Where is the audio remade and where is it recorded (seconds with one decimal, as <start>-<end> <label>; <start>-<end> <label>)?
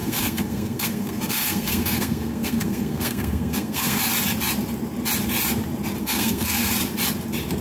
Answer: 0.0-4.0 remade; 4.0-6.0 recorded; 6.0-6.7 remade; 6.7-7.6 recorded